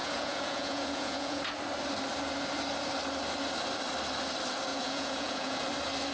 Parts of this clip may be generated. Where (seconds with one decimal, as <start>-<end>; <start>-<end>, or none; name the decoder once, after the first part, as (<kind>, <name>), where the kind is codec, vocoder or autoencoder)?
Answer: 0.0-1.4 (vocoder, Vocos); 4.7-5.6